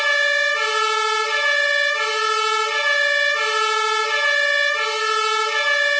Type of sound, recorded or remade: recorded